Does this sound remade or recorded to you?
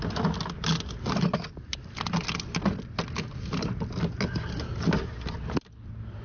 recorded